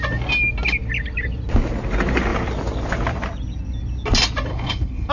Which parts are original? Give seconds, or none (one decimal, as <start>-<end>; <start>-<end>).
0.0-4.5